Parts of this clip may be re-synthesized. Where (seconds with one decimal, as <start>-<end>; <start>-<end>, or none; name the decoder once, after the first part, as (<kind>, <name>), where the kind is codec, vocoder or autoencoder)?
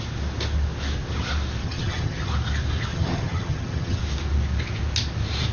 1.6-2.3 (vocoder, HiFi-GAN); 2.9-4.0